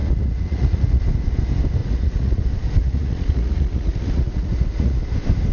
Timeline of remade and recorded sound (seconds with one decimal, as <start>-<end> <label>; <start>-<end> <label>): 0.0-1.0 remade; 1.0-1.8 recorded; 1.8-2.4 remade; 2.4-2.8 recorded; 2.8-5.0 remade; 5.0-5.5 recorded